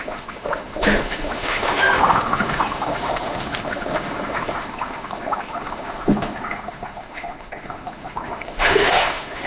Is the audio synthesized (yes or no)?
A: yes